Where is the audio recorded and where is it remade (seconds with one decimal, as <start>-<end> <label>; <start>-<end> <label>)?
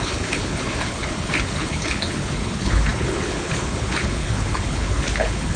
0.0-5.6 remade